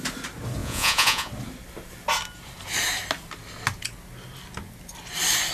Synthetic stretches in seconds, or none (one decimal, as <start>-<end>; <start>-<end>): 0.6-1.3